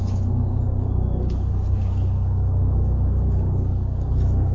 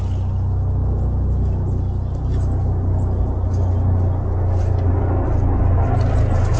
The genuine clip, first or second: second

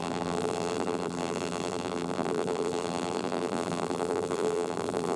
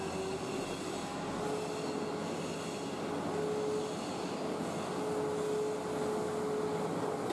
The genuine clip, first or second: second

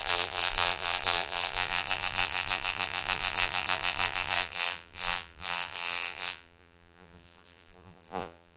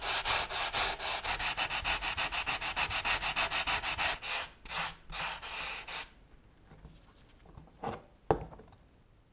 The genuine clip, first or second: second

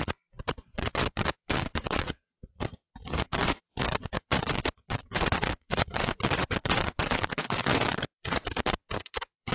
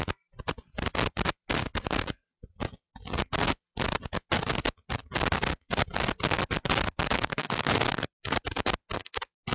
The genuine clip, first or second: second